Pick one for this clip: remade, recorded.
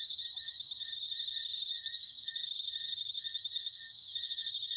remade